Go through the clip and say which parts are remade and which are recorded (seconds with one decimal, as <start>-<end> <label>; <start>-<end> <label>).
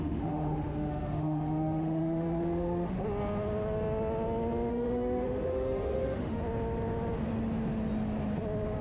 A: 0.0-3.0 remade; 3.0-4.7 recorded; 4.7-6.4 remade; 6.4-8.8 recorded